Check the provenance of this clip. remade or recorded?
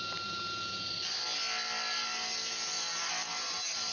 recorded